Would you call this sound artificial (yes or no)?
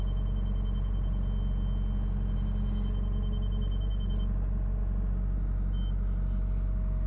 no